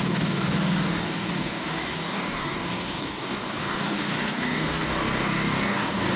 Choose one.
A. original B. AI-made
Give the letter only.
B